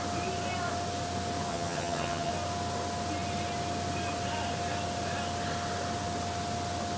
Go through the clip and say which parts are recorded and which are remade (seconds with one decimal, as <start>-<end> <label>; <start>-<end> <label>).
0.0-1.5 recorded; 1.5-2.3 remade; 2.3-7.0 recorded